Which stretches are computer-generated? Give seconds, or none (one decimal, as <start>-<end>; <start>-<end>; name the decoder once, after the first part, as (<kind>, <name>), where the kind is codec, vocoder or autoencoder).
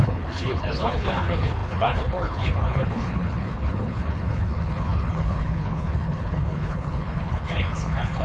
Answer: 0.0-8.2 (codec, HILCodec)